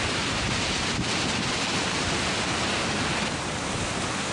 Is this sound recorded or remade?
recorded